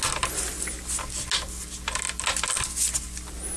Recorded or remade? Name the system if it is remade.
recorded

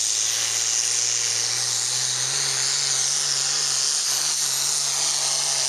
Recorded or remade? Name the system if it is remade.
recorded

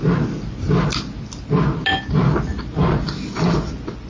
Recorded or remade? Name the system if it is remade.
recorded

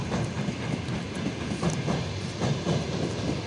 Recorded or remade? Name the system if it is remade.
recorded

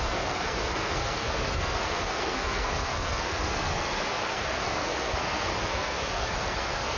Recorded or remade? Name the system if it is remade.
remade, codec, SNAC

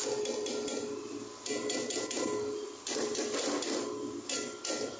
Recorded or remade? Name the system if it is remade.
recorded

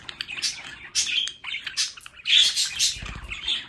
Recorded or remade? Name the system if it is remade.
recorded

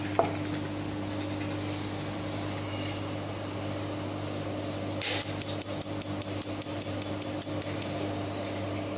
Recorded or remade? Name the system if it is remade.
recorded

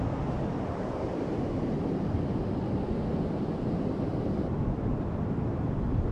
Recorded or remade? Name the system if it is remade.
recorded